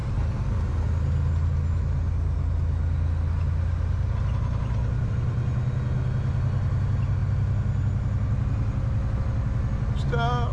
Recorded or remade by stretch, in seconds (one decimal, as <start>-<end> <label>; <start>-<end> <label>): 0.0-10.5 recorded